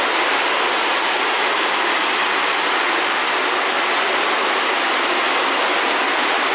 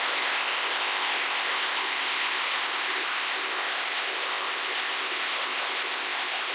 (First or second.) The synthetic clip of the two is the second